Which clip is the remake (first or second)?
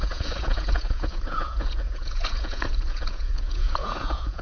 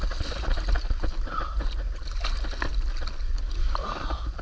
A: first